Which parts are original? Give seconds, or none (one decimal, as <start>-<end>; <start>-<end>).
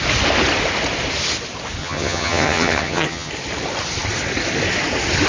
0.0-1.8; 3.3-5.3